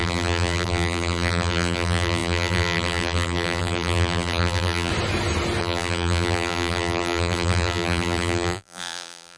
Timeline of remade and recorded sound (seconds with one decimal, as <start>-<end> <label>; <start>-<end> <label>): 0.0-4.9 remade; 4.9-5.6 recorded; 5.6-9.4 remade

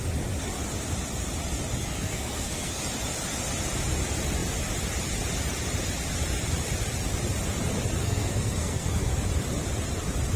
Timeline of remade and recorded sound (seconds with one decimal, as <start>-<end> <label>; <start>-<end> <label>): 0.0-1.8 recorded; 1.8-2.8 remade; 2.8-8.0 recorded; 8.0-9.1 remade; 9.1-10.4 recorded